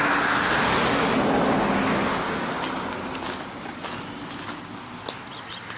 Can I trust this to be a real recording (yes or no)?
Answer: yes